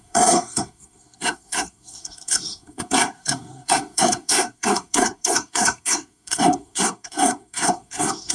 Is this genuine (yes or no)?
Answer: no